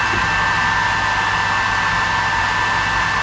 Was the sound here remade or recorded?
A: recorded